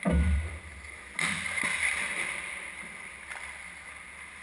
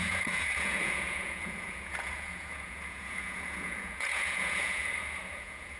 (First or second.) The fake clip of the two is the second